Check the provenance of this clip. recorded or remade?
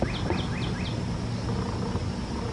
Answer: recorded